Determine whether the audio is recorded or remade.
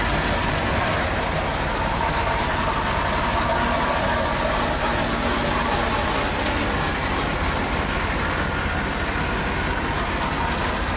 recorded